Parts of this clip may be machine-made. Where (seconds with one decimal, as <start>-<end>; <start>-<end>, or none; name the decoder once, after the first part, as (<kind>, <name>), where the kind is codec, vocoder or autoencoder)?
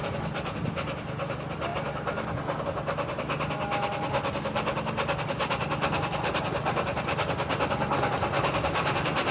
none